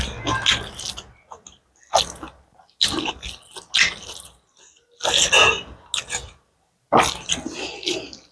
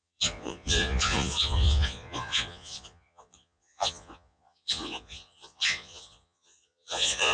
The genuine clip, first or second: first